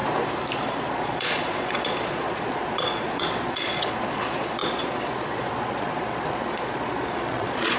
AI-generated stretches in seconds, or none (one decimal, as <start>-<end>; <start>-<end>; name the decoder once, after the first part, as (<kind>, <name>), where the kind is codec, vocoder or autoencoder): 0.9-7.8 (vocoder, Vocos)